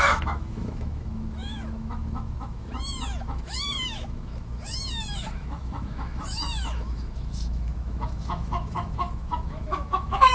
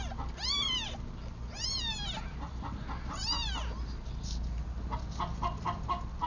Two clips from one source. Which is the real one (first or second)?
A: second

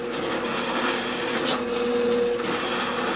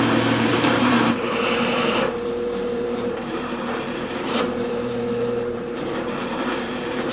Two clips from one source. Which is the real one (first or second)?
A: first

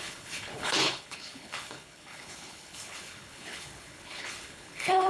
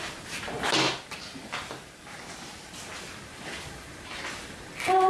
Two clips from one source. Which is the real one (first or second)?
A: second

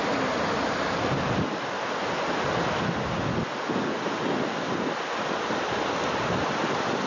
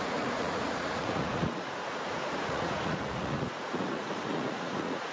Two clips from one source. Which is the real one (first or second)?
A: first